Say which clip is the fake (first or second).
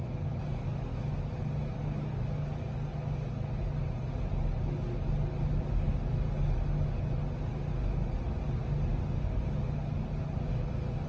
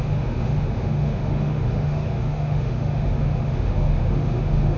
second